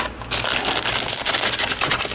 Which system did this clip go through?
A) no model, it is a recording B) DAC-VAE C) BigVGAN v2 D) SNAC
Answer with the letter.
A